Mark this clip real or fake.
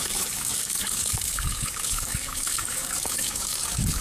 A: fake